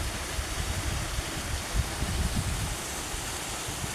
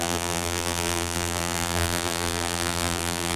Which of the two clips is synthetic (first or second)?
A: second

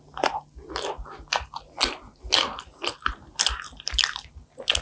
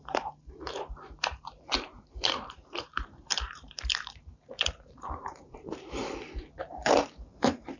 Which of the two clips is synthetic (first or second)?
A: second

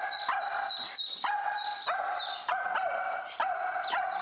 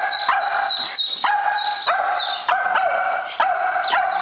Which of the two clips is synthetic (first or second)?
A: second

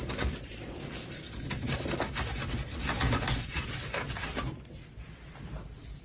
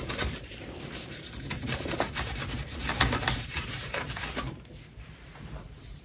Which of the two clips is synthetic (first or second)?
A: second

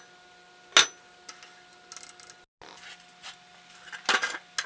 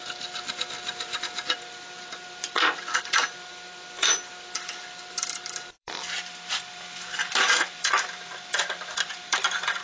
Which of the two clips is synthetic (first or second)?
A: second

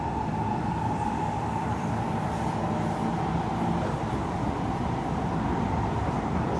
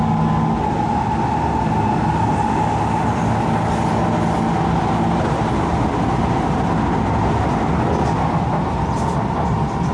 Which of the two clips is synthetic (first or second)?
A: first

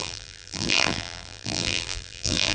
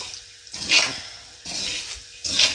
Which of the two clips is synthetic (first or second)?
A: first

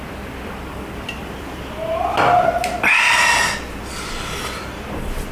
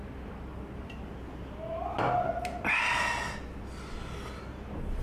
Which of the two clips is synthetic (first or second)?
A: first